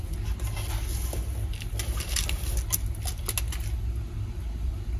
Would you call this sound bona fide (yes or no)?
yes